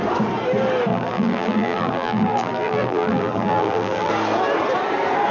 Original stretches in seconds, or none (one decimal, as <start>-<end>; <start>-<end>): 0.0-0.9; 4.1-5.3